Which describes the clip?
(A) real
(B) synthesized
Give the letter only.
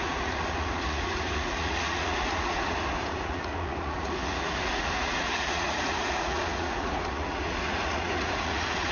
B